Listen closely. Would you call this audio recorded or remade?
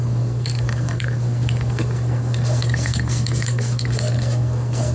remade